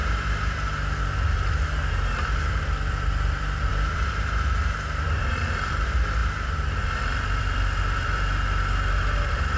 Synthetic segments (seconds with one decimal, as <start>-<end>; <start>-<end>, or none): 2.3-9.6